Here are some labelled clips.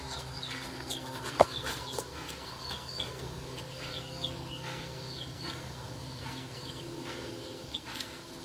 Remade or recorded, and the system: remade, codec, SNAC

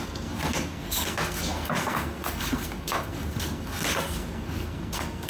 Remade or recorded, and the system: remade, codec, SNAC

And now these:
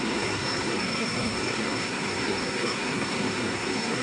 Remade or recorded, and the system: remade, codec, SNAC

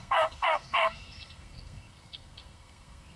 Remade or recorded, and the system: remade, codec, SNAC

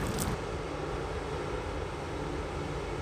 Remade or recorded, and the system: recorded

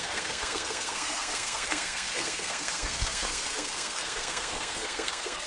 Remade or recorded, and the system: remade, codec, SNAC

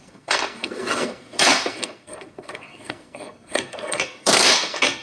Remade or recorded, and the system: remade, codec, SNAC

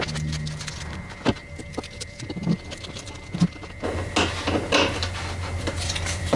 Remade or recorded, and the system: recorded